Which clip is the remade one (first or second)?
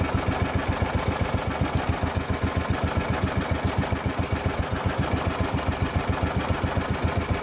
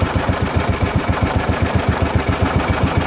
second